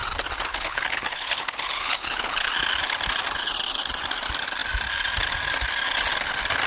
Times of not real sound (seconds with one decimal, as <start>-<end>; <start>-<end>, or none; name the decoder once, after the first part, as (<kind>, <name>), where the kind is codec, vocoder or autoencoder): 0.5-2.5 (codec, HILCodec)